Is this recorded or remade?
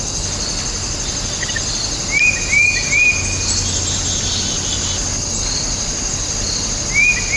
recorded